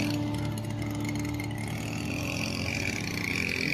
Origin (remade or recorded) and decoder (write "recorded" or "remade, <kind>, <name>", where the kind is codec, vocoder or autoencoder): recorded